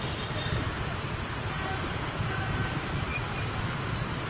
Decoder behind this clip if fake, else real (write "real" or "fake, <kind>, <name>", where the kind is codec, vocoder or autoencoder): real